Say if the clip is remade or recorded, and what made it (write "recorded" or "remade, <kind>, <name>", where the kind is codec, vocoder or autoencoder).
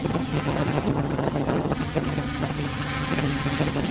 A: remade, vocoder, HiFi-GAN